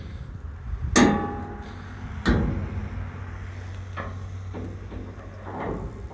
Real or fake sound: real